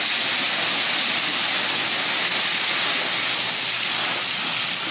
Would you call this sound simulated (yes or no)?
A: no